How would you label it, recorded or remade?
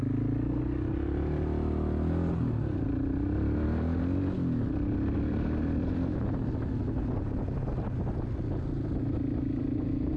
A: recorded